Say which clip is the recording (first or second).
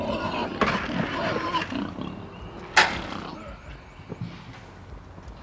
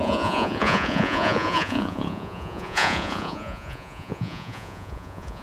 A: first